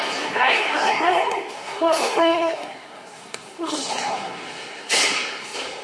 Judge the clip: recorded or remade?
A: remade